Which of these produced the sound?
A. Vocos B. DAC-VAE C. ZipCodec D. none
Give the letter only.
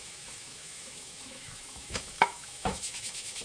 B